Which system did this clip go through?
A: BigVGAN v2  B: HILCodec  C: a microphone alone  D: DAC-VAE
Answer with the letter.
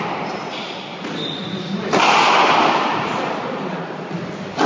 C